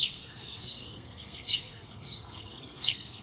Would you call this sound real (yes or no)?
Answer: no